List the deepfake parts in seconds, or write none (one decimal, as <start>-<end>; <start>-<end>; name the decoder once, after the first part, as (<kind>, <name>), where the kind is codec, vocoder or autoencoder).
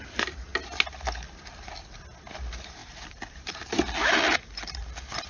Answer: 2.8-5.3 (vocoder, BigVGAN v2)